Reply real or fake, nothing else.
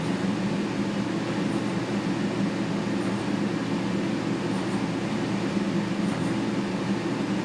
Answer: real